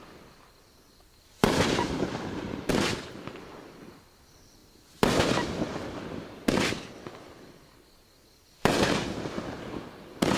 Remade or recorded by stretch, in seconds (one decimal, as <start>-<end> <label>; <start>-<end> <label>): 0.0-1.4 recorded; 1.4-2.7 remade; 2.7-10.4 recorded